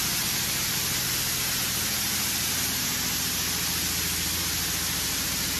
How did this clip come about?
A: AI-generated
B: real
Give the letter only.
B